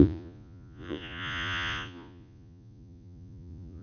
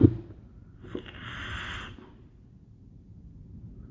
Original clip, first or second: second